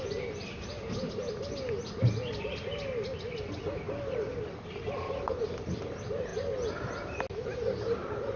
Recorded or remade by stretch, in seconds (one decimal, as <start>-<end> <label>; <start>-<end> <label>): 0.0-8.4 recorded